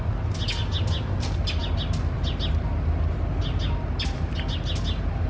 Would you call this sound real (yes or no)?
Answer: yes